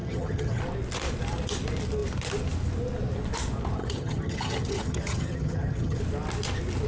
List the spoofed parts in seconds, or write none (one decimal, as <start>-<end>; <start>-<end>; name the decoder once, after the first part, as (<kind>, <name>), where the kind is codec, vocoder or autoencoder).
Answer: 0.0-0.6 (vocoder, HiFi-GAN); 3.8-6.0